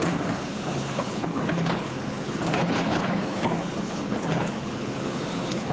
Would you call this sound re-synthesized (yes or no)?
yes